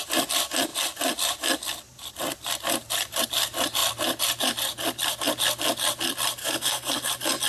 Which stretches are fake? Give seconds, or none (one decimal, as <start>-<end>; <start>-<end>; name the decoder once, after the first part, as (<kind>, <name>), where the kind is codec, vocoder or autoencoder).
6.4-7.1 (codec, SNAC)